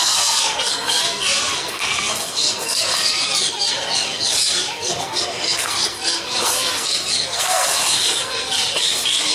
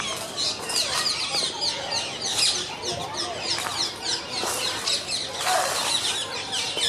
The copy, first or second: first